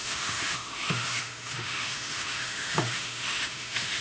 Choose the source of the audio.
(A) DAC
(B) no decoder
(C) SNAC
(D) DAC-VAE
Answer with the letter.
D